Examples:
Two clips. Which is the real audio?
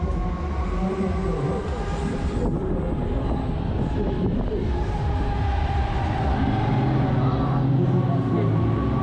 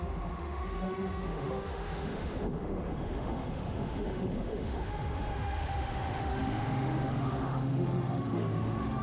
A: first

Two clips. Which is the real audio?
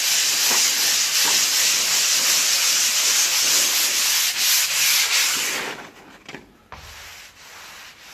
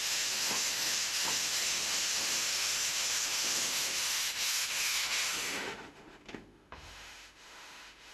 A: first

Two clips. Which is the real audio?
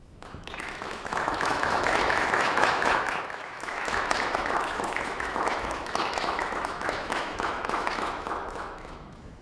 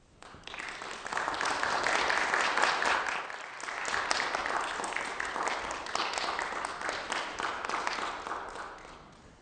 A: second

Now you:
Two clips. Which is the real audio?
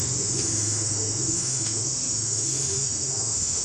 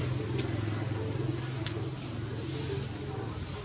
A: second